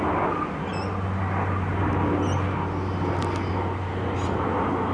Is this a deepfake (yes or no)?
no